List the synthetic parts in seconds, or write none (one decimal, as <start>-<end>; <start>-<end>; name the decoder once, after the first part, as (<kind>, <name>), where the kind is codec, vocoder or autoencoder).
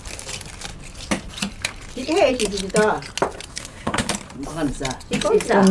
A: 3.5-4.1 (codec, SNAC)